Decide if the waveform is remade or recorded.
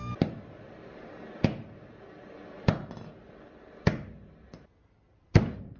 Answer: recorded